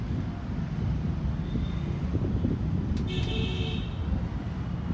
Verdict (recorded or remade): recorded